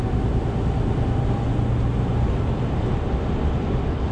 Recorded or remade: recorded